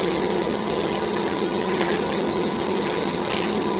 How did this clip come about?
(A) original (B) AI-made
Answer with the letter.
B